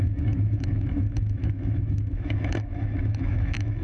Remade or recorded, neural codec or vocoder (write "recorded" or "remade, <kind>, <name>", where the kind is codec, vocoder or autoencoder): remade, autoencoder, DAC-VAE